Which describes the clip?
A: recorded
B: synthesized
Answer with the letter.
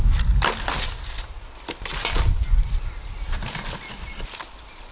A